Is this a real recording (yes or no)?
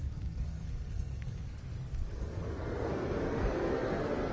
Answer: no